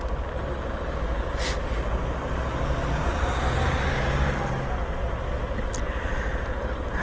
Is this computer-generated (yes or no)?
no